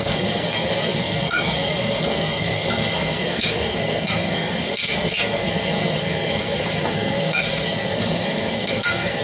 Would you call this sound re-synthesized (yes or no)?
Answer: yes